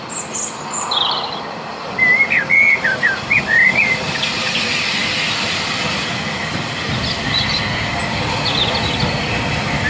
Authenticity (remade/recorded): recorded